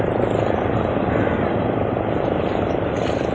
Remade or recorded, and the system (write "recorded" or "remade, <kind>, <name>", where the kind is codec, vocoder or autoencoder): recorded